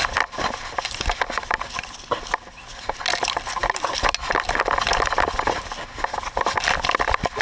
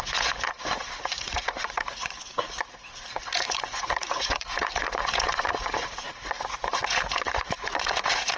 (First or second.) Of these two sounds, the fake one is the second